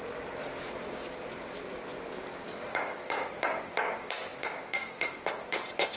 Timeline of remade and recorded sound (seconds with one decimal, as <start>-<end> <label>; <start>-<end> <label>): 0.0-2.3 recorded; 2.3-3.3 remade; 3.3-4.4 recorded; 4.4-5.1 remade; 5.1-6.0 recorded